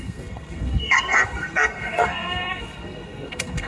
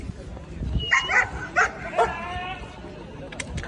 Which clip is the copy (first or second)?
first